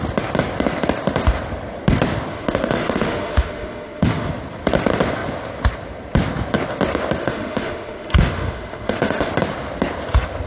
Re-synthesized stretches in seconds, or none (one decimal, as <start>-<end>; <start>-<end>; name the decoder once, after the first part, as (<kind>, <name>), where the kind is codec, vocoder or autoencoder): 2.3-4.3 (autoencoder, DAC-VAE); 7.2-9.3

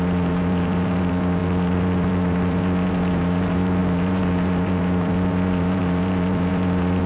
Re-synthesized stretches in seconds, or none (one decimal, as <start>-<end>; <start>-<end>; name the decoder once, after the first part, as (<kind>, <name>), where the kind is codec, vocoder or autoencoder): 0.0-7.1 (vocoder, BigVGAN v2)

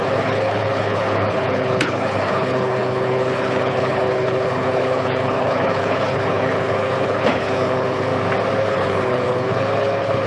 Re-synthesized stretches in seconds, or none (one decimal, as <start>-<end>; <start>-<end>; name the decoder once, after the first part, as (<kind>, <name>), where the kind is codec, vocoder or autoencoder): 0.0-8.1 (codec, HILCodec); 8.6-10.3

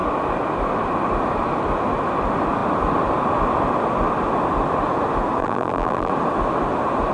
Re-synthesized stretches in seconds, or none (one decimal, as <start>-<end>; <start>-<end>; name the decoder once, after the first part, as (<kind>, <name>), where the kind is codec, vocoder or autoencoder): 5.4-6.1 (vocoder, BigVGAN v2)

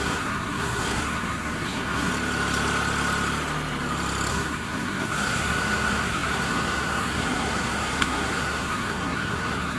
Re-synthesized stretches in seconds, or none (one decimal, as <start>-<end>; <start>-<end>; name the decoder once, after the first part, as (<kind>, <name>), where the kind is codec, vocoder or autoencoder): 0.0-2.1 (codec, SNAC); 4.3-9.8